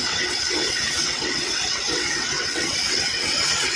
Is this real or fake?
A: fake